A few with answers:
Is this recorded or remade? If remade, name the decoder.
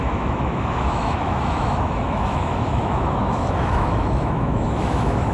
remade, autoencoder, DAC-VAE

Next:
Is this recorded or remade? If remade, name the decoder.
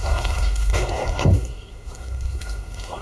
remade, codec, SNAC